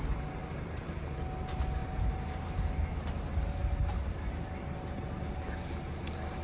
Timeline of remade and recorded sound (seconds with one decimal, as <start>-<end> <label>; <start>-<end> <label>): 0.0-0.4 recorded; 0.4-1.0 remade; 1.0-1.8 recorded; 1.8-2.7 remade; 2.7-3.6 recorded; 3.6-5.3 remade; 5.3-6.4 recorded